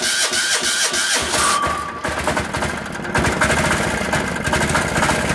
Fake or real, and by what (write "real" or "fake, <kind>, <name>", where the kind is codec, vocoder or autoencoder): real